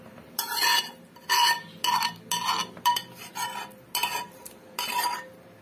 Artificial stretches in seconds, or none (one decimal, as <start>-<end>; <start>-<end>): none